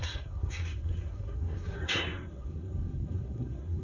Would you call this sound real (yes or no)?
no